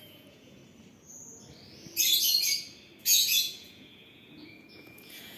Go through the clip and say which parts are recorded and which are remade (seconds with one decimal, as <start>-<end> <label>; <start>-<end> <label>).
0.0-0.6 remade; 0.6-3.0 recorded; 3.0-5.4 remade